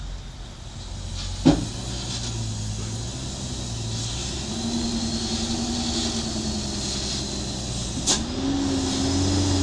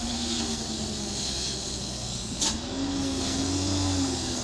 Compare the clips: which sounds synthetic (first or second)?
second